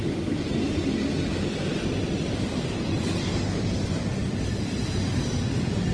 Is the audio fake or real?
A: real